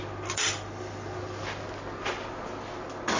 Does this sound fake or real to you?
real